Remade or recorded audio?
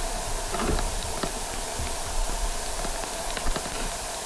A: recorded